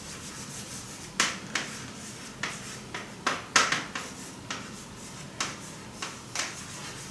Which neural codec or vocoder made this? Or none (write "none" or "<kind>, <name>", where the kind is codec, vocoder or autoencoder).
none